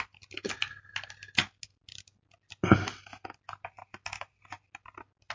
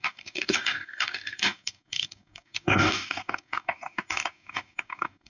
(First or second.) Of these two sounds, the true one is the first